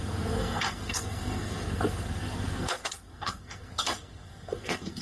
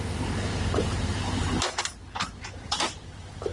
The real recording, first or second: second